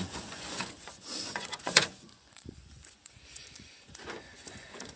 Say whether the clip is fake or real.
fake